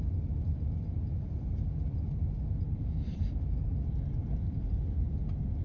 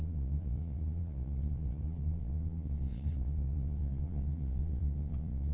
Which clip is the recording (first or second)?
first